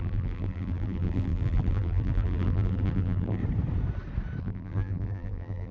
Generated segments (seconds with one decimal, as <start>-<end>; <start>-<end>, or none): 0.0-3.4; 4.4-5.7